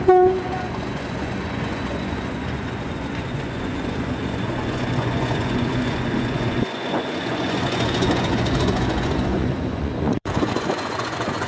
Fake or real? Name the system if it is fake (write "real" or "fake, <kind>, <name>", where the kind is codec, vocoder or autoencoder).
fake, vocoder, Vocos